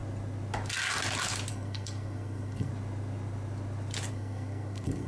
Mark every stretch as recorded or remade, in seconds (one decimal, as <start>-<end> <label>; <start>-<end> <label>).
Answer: 0.0-1.5 recorded; 1.5-2.7 remade; 2.7-4.1 recorded; 4.1-5.1 remade